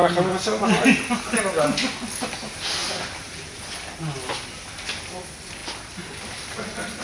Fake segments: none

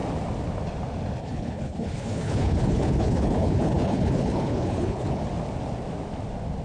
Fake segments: 1.2-5.2